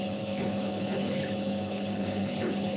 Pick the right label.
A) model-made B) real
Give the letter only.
A